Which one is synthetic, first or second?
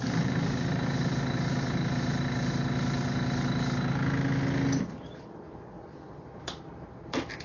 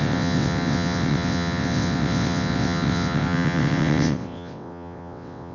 second